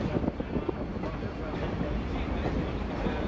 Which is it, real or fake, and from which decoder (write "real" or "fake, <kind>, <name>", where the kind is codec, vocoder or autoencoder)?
real